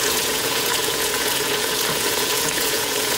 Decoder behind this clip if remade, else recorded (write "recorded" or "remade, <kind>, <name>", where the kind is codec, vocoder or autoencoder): remade, vocoder, Vocos